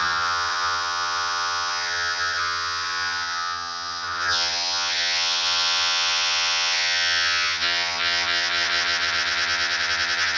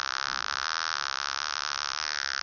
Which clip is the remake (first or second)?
first